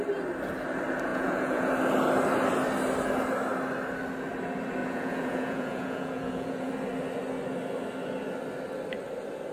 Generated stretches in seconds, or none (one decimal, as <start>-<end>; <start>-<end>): 1.1-1.7; 4.8-6.7